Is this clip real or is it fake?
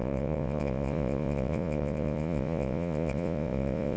fake